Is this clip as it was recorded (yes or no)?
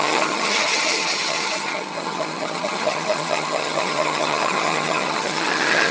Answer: no